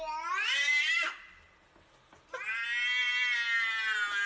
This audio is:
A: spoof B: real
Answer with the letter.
B